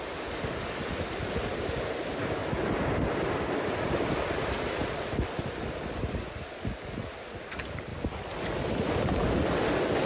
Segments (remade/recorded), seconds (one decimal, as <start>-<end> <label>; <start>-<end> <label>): 0.0-10.1 recorded